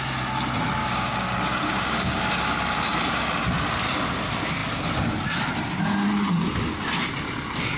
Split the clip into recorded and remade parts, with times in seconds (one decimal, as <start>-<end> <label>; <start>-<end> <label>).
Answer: 0.0-0.8 recorded; 0.8-2.2 remade; 2.2-7.8 recorded

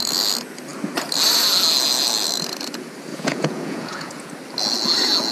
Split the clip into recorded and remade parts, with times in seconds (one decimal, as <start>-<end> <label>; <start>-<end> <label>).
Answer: 0.0-3.1 recorded; 3.1-4.3 remade; 4.3-5.3 recorded

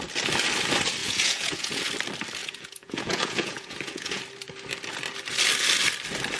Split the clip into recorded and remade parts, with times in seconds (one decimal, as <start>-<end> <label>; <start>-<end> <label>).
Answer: 0.0-1.0 recorded; 1.0-1.9 remade; 1.9-2.4 recorded; 2.4-4.2 remade; 4.2-6.4 recorded